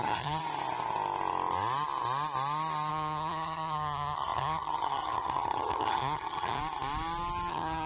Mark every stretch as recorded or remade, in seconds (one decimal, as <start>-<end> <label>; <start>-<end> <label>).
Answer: 0.0-0.4 remade; 0.4-2.9 recorded; 2.9-6.6 remade; 6.6-7.5 recorded; 7.5-7.9 remade

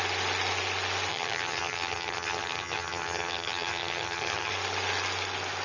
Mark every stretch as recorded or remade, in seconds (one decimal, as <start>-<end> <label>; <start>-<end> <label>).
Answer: 0.0-1.1 recorded; 1.1-4.5 remade; 4.5-5.6 recorded